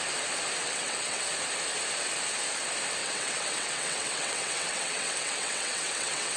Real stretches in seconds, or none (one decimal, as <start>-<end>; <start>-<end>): 0.0-0.6; 1.3-3.0